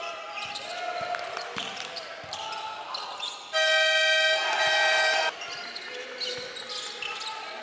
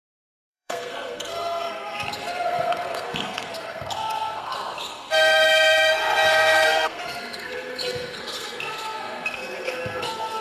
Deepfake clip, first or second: second